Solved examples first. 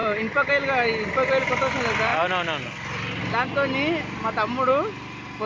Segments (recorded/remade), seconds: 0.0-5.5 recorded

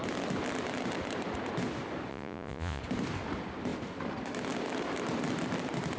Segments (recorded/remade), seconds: 0.0-2.1 recorded; 2.1-2.8 remade; 2.8-6.0 recorded

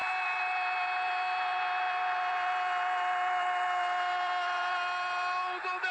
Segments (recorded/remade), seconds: 0.0-5.9 recorded